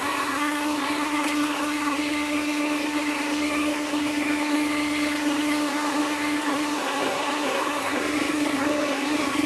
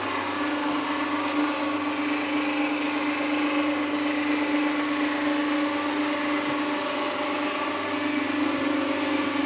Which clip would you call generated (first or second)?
first